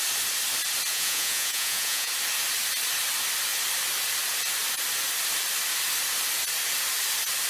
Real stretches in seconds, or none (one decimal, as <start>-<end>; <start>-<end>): 0.0-0.9; 2.1-7.5